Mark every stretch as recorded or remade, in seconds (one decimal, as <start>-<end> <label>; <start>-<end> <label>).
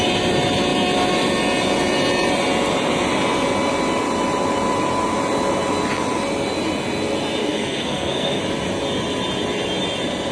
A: 0.0-7.4 recorded; 7.4-8.4 remade; 8.4-10.3 recorded